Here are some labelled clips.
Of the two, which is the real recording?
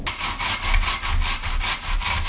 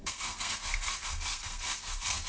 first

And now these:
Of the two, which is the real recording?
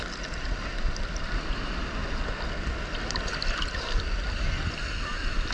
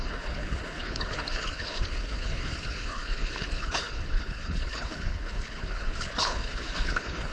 first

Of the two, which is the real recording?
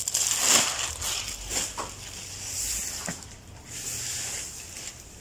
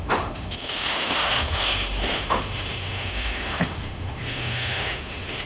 first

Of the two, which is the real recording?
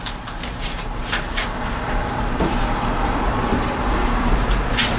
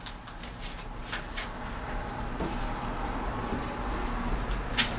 second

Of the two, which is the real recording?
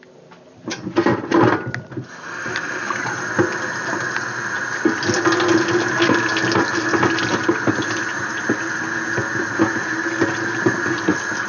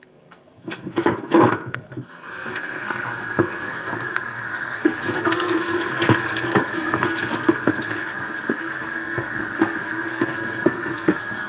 first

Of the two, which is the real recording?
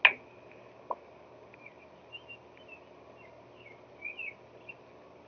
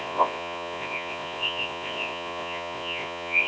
first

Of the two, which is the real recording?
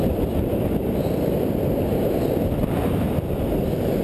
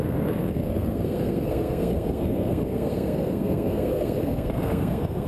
first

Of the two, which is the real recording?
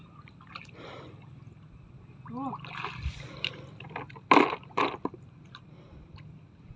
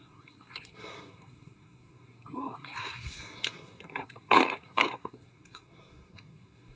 first